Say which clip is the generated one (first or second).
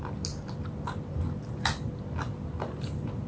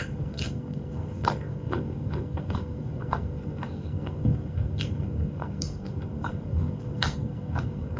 second